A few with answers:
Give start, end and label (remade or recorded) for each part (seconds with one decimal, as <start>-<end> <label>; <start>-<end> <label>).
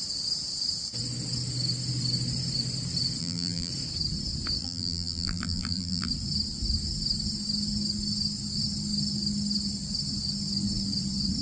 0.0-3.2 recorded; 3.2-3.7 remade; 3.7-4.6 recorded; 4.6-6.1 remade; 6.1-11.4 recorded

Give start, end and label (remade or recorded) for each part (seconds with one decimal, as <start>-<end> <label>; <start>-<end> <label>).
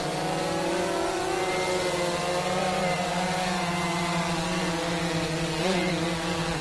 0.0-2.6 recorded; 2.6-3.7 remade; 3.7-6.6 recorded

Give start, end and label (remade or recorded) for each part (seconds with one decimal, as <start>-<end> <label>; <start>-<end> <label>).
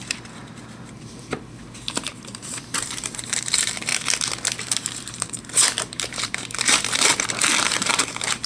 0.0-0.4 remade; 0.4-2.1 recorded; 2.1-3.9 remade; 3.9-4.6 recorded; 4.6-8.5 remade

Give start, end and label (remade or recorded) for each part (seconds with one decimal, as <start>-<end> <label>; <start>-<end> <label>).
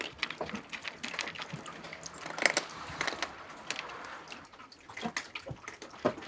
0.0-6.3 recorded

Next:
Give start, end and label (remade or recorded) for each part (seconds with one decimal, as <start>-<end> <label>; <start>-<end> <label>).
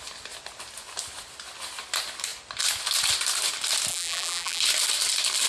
0.0-3.9 recorded; 3.9-4.6 remade; 4.6-5.5 recorded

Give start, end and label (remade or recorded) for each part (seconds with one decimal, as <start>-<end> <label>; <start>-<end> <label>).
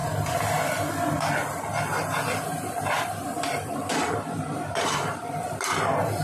0.0-0.9 remade; 0.9-2.5 recorded; 2.5-5.8 remade; 5.8-6.2 recorded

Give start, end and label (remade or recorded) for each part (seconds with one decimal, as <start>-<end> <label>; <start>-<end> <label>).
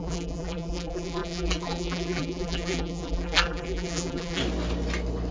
0.0-4.4 remade; 4.4-5.3 recorded